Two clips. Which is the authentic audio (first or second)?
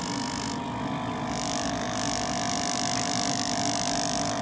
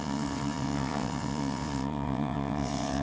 first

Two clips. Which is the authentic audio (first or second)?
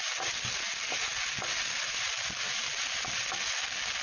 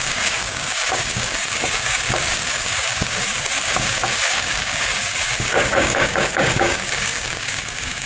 first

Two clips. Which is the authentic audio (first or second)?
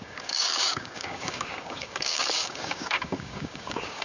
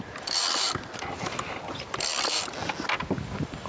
second